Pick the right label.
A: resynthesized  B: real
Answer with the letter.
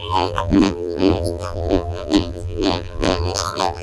A